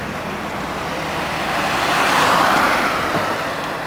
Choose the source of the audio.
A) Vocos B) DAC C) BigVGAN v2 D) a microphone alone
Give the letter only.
C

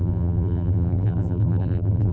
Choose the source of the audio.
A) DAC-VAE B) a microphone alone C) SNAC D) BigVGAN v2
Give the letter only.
D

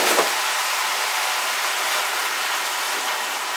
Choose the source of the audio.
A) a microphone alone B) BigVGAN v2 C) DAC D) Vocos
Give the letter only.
A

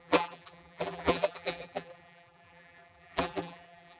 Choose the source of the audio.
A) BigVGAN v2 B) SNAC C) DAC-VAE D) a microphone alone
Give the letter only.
A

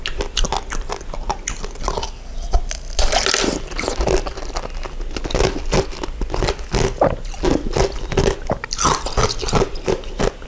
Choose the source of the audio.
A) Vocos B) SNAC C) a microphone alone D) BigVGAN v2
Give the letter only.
C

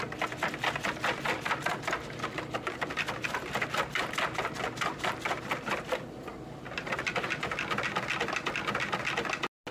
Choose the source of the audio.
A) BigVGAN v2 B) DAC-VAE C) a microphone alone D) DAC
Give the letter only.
C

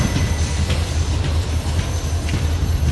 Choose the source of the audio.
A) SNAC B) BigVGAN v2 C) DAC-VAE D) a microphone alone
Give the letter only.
B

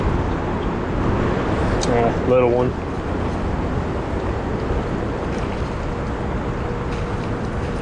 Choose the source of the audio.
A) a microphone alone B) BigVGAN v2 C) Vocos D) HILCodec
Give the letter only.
A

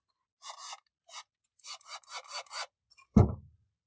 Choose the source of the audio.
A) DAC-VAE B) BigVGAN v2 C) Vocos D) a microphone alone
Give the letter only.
B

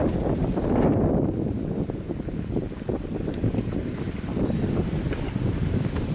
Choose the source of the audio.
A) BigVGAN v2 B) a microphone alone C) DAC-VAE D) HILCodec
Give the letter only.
A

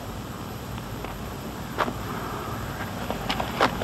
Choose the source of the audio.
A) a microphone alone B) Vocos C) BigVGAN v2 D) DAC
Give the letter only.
C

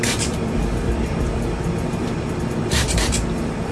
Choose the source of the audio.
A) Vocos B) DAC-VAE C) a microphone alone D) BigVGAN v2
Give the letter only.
D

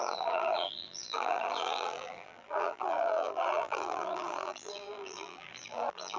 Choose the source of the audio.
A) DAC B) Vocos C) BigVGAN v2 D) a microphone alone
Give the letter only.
C